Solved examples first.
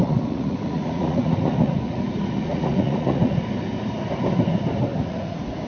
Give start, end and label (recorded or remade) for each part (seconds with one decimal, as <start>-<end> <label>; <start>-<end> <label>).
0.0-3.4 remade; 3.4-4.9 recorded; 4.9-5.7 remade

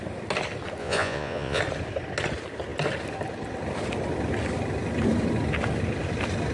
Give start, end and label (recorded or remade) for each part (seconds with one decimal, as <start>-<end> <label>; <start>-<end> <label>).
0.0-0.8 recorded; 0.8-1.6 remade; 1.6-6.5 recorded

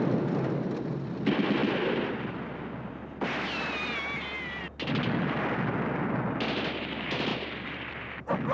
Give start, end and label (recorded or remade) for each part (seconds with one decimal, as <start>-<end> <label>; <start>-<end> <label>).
0.0-8.5 recorded

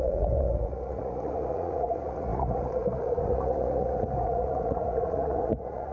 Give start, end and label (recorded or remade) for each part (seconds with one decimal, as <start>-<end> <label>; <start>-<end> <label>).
0.0-5.9 remade

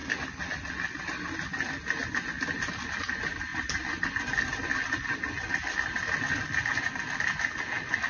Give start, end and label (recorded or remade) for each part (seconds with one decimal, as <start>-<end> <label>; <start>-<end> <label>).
0.0-8.1 recorded